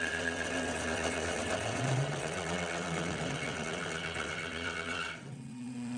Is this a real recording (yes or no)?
no